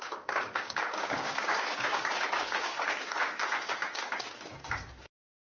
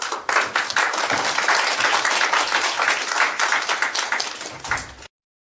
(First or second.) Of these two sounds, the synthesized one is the first